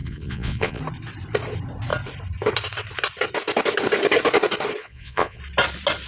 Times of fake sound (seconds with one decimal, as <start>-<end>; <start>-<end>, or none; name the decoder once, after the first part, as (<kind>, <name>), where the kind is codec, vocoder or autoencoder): 0.0-0.8 (vocoder, Vocos); 4.8-5.4